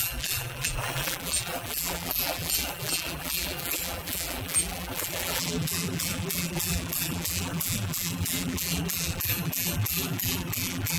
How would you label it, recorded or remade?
remade